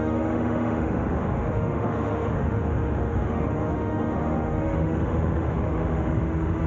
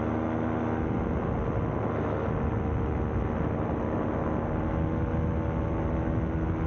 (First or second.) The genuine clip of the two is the second